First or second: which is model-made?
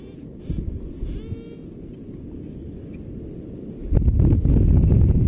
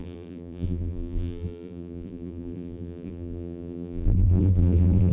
second